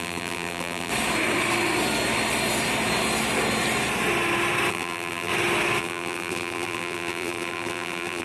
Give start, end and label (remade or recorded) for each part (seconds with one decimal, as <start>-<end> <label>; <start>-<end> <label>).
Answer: 0.0-0.9 remade; 0.9-4.7 recorded; 4.7-5.3 remade; 5.3-5.8 recorded; 5.8-8.2 remade